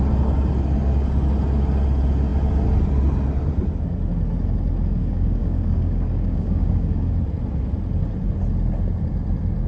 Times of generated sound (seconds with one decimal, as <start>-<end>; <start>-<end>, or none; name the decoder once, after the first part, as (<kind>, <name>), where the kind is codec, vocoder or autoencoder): 5.0-7.1 (codec, DAC)